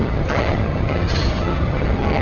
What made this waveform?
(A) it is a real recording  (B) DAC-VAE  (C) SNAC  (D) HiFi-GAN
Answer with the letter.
D